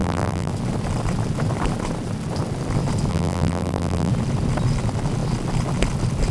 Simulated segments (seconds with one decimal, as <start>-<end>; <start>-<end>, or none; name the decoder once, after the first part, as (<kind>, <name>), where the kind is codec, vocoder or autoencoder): 0.0-0.5 (vocoder, BigVGAN v2); 3.1-4.1